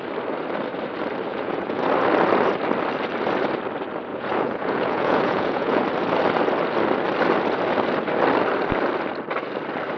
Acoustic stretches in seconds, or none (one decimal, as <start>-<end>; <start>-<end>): 0.0-1.3; 1.8-4.1; 5.8-10.0